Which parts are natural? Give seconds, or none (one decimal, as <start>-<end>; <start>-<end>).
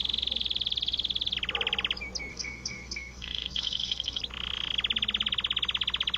0.0-2.3; 4.2-6.2